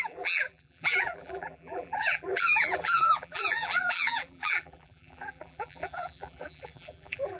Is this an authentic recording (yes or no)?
no